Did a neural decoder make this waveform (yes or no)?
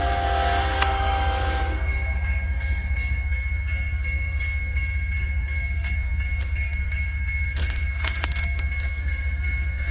yes